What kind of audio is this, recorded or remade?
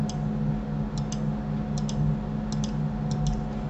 recorded